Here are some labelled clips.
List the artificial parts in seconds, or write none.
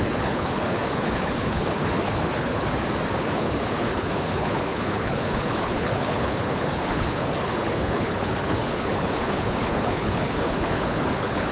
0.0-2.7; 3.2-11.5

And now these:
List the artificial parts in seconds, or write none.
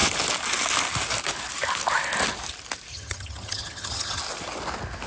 2.9-4.2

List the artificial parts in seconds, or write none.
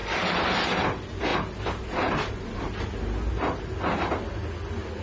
0.0-0.8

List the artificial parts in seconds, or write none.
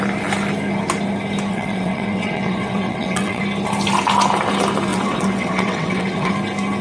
1.5-3.4; 4.9-6.3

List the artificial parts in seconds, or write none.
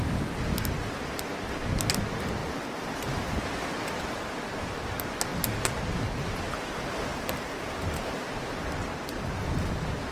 2.4-3.4; 7.1-8.3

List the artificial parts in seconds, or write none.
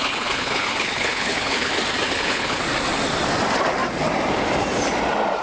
0.0-1.7; 2.1-2.6